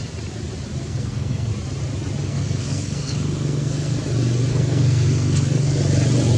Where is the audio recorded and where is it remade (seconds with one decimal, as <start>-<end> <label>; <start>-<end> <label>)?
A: 0.0-0.8 recorded; 0.8-1.5 remade; 1.5-2.2 recorded; 2.2-4.0 remade; 4.0-4.5 recorded; 4.5-5.8 remade; 5.8-6.4 recorded